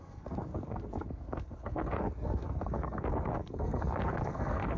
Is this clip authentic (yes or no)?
no